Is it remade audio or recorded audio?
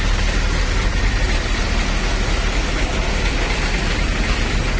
recorded